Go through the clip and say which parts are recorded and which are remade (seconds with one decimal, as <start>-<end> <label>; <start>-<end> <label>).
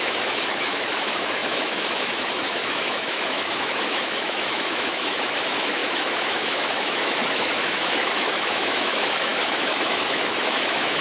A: 0.0-11.0 remade